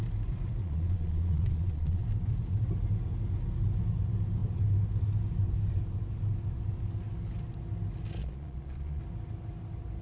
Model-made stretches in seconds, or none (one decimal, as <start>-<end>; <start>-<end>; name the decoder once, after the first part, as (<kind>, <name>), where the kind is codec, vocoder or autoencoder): 0.6-2.0 (vocoder, Vocos); 8.2-9.0